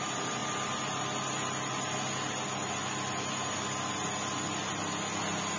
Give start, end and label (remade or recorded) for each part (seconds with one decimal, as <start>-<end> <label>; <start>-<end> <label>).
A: 0.0-5.6 recorded